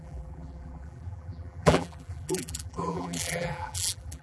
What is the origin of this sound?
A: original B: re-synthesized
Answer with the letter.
B